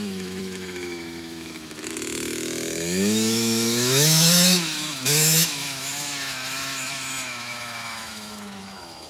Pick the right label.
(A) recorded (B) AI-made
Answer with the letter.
B